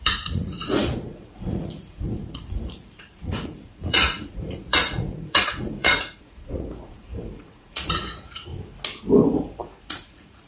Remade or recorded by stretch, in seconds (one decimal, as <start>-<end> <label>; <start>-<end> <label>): 0.0-8.5 remade; 8.5-9.9 recorded; 9.9-10.5 remade